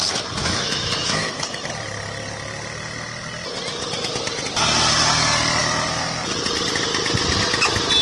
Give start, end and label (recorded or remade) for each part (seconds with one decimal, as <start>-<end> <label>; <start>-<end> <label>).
0.0-0.4 recorded; 0.4-1.3 remade; 1.3-8.0 recorded